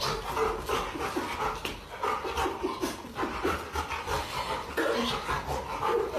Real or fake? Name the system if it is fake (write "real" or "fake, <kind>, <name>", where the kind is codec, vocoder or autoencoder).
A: real